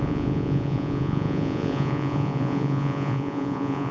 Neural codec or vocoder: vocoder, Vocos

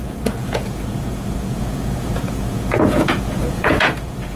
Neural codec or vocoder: vocoder, Vocos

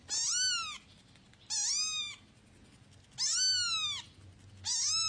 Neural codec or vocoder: none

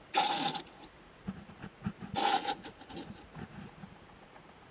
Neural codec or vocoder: vocoder, Vocos